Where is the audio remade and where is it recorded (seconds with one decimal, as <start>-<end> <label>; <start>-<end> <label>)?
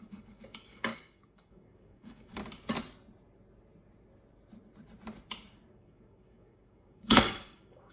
0.0-2.4 remade; 2.4-5.7 recorded; 5.7-7.9 remade